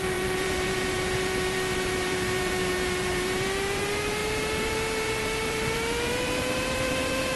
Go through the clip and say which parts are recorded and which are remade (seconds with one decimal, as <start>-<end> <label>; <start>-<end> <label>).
0.0-7.4 remade